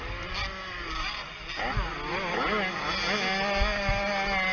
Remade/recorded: recorded